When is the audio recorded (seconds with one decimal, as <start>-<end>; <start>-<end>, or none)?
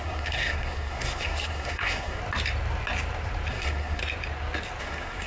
2.2-3.5; 4.0-4.8